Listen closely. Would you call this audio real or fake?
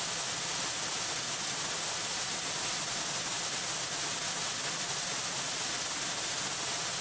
real